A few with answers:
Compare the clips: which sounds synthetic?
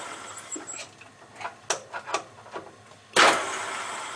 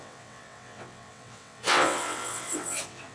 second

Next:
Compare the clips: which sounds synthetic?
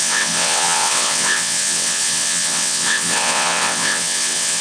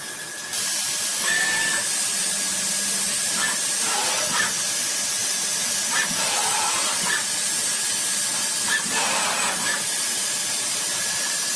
first